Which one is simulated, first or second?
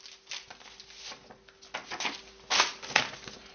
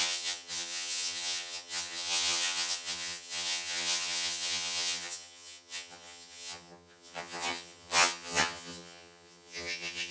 second